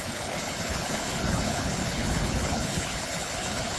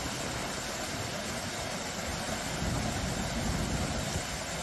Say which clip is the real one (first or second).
second